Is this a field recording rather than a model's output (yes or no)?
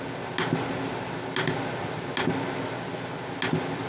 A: yes